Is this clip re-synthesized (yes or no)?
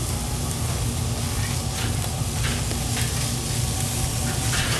no